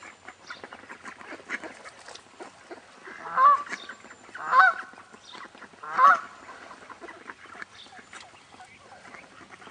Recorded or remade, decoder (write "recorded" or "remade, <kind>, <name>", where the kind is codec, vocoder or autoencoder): recorded